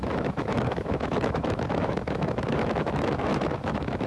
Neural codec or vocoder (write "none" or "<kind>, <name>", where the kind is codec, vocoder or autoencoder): autoencoder, DAC-VAE